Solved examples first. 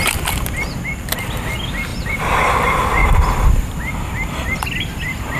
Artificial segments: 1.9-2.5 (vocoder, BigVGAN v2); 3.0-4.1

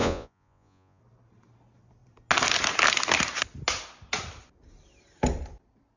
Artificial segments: 0.0-1.0 (vocoder, Vocos)

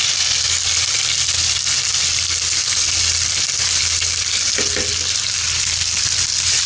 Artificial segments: none

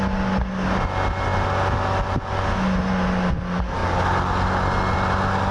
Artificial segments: none